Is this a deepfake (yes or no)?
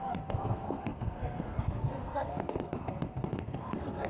yes